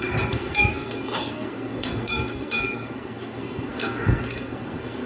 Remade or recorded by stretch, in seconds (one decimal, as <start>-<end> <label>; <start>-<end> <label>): 0.0-5.1 remade